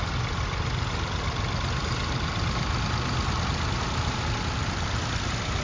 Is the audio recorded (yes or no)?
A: yes